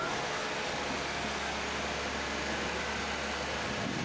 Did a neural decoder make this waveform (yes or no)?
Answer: no